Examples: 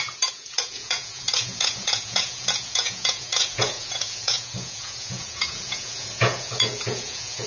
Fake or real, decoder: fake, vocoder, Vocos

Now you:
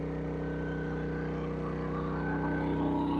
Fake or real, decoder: real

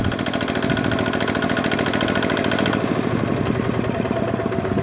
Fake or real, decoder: real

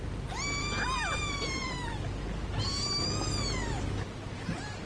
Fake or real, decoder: real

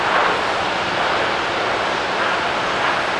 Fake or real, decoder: real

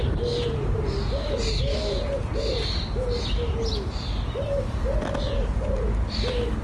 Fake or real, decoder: real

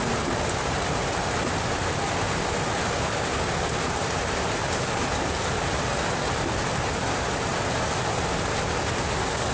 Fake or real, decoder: real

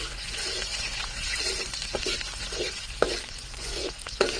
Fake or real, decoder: fake, vocoder, Vocos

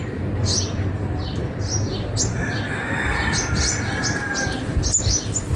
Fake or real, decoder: real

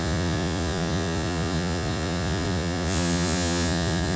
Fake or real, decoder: fake, vocoder, Vocos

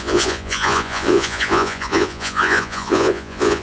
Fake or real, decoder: fake, vocoder, Vocos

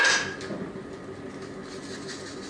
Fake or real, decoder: real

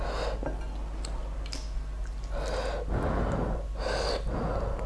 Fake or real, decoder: real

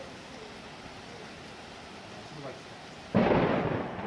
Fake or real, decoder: real